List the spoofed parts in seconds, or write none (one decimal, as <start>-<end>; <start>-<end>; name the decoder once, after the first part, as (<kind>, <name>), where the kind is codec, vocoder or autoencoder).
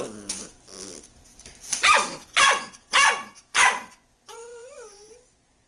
1.7-5.1 (vocoder, Vocos)